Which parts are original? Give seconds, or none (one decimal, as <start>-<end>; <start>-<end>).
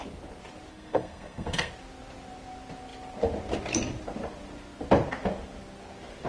0.0-0.7; 1.7-6.3